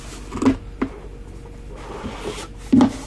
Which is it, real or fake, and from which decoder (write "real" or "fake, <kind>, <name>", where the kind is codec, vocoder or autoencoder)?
real